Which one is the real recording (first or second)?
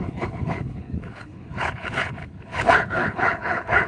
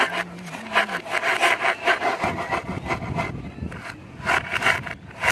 second